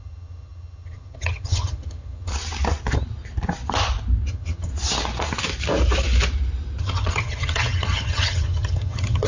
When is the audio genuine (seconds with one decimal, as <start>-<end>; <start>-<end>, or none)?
2.3-4.3; 4.7-6.8